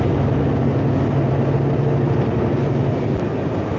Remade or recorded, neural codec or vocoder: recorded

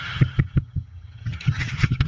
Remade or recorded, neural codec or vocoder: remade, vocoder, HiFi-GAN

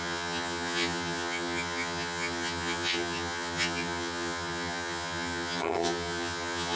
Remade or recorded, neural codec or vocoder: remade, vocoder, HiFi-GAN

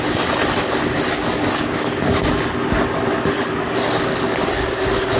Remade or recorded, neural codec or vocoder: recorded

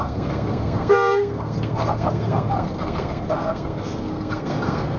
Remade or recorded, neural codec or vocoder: remade, codec, SNAC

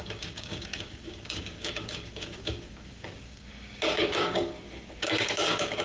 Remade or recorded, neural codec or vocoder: remade, codec, DAC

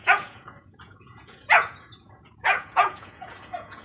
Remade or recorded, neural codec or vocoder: remade, vocoder, Vocos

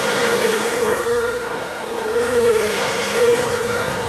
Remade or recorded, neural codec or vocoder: remade, codec, SNAC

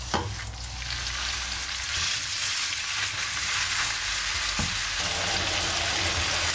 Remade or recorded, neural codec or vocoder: recorded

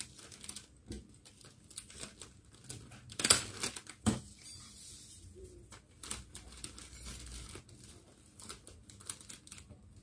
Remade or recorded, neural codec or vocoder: recorded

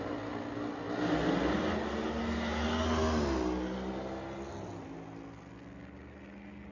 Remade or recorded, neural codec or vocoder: recorded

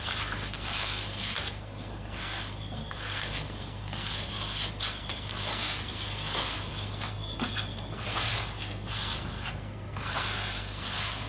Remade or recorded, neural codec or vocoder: remade, codec, SNAC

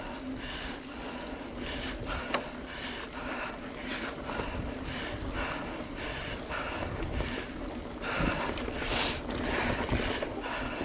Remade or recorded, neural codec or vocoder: recorded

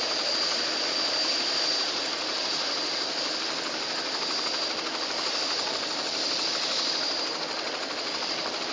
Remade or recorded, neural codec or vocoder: recorded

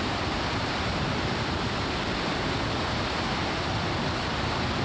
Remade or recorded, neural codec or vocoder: recorded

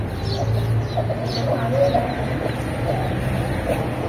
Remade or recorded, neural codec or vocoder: recorded